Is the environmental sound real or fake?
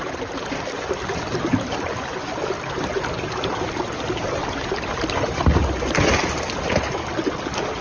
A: real